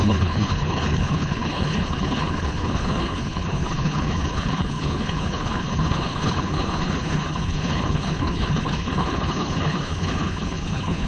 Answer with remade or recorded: remade